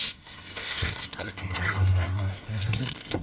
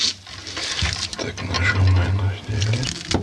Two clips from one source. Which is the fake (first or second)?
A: first